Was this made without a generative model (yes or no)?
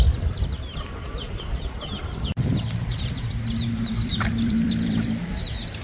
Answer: no